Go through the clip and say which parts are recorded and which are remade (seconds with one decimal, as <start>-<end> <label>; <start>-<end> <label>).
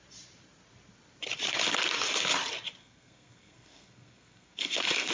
0.0-2.8 recorded; 2.8-5.1 remade